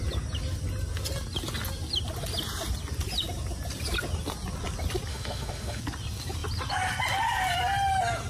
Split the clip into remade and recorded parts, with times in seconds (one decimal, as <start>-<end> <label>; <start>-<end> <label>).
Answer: 0.0-5.1 recorded; 5.1-5.8 remade; 5.8-8.3 recorded